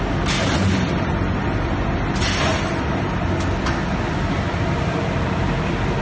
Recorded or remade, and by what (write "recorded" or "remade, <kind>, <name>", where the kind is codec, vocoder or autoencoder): recorded